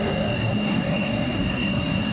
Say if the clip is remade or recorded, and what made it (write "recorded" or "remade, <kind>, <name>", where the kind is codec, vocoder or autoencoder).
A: remade, codec, SNAC